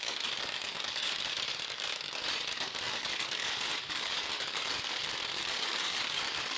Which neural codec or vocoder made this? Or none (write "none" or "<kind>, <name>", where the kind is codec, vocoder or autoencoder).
codec, DAC